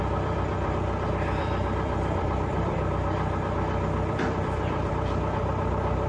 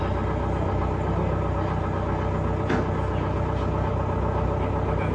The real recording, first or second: second